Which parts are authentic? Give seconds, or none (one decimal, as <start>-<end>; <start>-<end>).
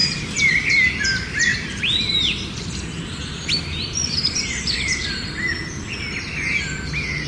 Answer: 0.7-1.5; 5.1-7.3